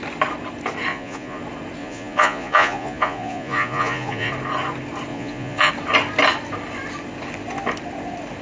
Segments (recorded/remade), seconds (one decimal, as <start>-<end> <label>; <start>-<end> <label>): 0.0-0.9 recorded; 0.9-1.4 remade; 1.4-1.8 recorded; 1.8-4.3 remade; 4.3-5.1 recorded; 5.1-5.7 remade; 5.7-8.4 recorded